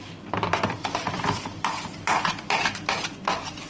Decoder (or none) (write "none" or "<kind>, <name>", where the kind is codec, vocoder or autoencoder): none